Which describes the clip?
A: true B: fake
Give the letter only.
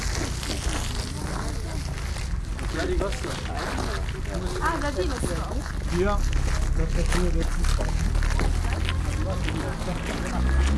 A